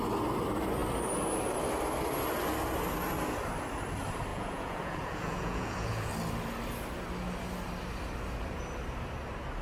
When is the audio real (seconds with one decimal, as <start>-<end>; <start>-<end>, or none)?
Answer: 0.0-4.3; 6.1-9.6